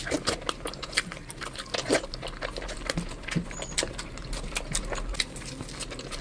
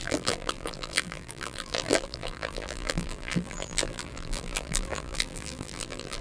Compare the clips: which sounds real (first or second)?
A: first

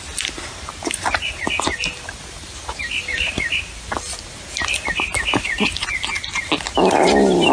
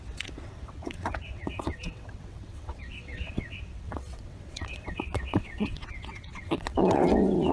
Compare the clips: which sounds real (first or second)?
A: first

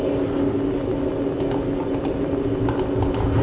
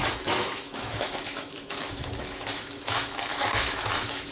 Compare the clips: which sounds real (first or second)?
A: first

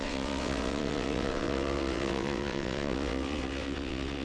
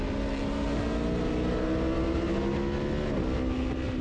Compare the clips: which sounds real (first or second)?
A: second